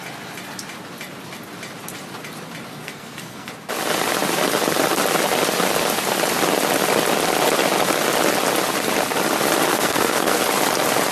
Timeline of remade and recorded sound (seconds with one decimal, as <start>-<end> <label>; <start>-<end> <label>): 0.0-2.7 recorded; 2.7-3.5 remade; 3.5-9.7 recorded; 9.7-10.4 remade; 10.4-11.1 recorded